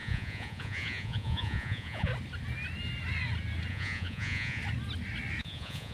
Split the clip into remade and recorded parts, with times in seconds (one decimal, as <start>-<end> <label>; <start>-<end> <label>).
0.0-2.1 remade; 2.1-3.7 recorded; 3.7-4.6 remade; 4.6-5.4 recorded; 5.4-5.9 remade